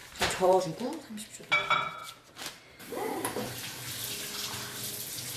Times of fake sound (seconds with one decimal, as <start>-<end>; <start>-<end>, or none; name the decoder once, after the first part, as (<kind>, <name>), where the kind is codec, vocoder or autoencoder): 0.0-0.6 (vocoder, BigVGAN v2); 2.0-3.8